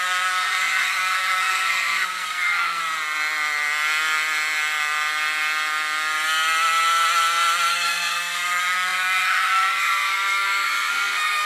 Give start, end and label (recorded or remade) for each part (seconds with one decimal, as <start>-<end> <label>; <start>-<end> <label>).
0.0-2.8 remade; 2.8-7.7 recorded; 7.7-11.5 remade